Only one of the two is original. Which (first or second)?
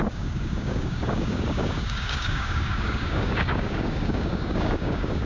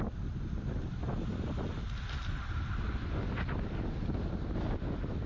second